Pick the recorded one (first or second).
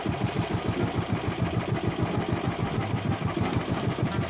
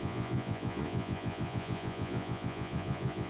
first